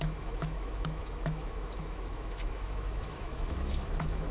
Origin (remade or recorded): remade